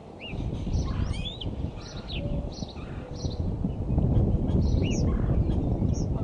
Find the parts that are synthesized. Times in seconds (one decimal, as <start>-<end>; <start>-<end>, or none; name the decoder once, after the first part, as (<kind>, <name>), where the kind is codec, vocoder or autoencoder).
none